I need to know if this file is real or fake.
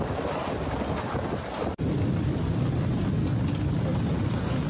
real